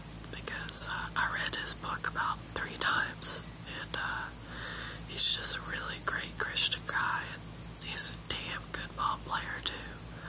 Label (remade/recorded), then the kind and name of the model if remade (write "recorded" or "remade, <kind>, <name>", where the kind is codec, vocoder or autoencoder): recorded